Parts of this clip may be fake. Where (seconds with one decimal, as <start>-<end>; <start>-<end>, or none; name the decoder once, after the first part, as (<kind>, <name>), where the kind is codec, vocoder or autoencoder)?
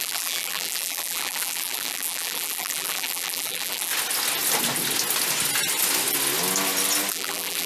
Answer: 0.0-3.9 (vocoder, BigVGAN v2); 7.1-7.7